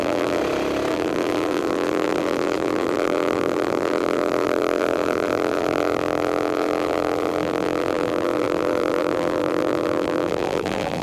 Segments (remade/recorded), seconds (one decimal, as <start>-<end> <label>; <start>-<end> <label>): 0.0-0.4 remade; 0.4-0.9 recorded; 0.9-11.0 remade